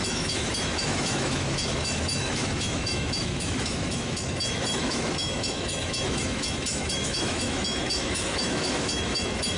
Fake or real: fake